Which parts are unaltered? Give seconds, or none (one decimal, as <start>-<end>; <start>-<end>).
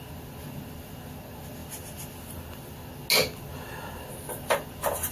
0.0-5.1